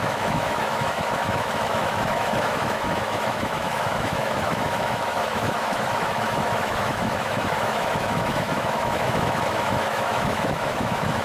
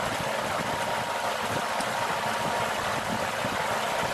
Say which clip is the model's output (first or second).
first